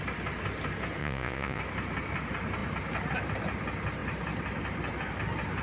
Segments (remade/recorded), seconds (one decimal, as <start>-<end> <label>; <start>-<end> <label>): 0.0-1.0 recorded; 1.0-1.6 remade; 1.6-5.6 recorded